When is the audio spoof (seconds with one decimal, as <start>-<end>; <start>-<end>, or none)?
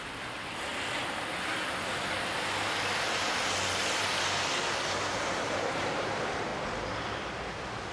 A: 0.0-0.7; 5.1-6.5